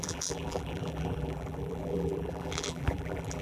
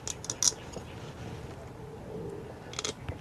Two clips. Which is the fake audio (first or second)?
first